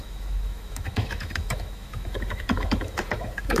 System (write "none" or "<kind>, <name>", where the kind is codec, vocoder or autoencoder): autoencoder, DAC-VAE